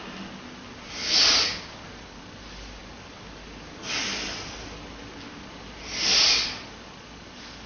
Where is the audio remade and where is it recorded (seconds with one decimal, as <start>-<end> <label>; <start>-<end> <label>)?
0.0-7.7 recorded